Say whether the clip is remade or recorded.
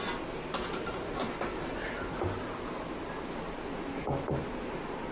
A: recorded